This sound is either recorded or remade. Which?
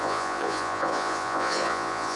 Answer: remade